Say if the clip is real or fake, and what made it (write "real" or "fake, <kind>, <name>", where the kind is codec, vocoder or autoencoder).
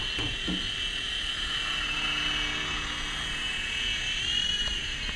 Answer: real